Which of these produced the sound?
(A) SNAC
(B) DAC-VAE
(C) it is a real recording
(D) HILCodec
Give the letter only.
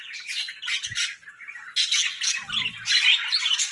C